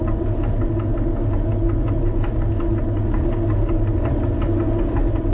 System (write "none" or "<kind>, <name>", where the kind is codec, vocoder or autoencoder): none